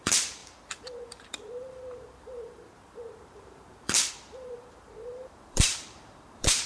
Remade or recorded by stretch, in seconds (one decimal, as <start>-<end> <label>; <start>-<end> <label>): 0.0-6.7 remade